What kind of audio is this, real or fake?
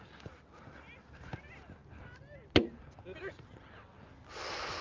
real